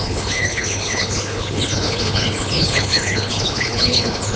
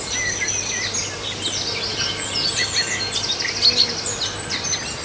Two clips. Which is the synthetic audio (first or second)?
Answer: first